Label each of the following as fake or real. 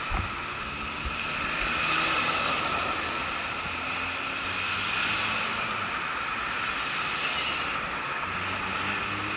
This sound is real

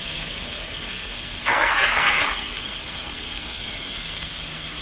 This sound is fake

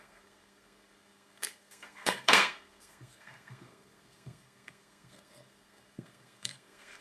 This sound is fake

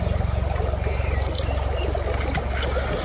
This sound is real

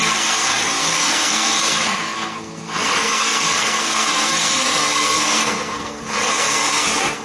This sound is fake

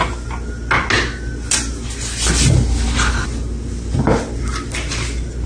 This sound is real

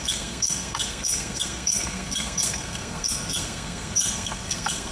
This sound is fake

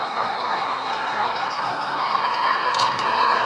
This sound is fake